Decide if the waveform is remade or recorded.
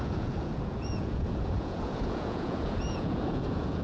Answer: remade